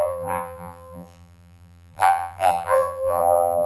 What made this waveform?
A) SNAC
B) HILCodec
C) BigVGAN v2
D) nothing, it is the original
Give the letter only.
C